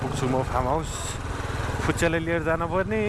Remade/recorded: recorded